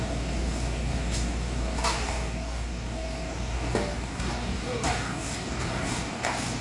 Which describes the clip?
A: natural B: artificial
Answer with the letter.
B